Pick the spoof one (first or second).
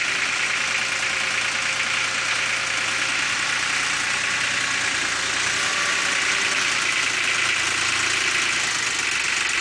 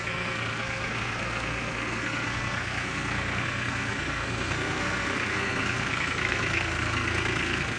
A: second